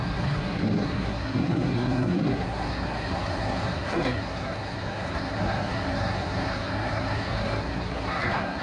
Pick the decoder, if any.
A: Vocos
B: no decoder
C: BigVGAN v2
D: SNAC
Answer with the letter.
D